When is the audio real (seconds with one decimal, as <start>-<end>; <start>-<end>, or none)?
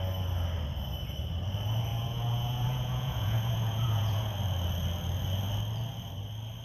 0.0-1.9; 4.3-6.6